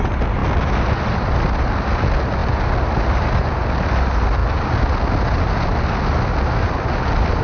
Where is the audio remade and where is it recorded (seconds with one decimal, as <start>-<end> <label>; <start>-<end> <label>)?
0.0-7.4 recorded